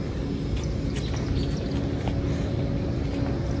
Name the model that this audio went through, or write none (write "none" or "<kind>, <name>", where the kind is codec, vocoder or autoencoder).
none